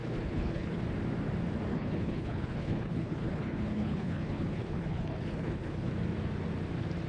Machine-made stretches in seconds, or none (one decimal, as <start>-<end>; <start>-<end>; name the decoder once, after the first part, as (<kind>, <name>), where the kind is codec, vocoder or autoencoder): 0.0-0.8 (codec, HILCodec); 1.7-5.9